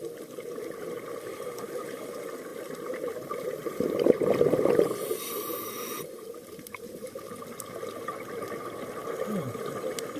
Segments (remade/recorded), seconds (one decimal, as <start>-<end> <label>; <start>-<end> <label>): 0.0-2.5 recorded; 2.5-4.9 remade; 4.9-9.0 recorded; 9.0-9.6 remade; 9.6-10.2 recorded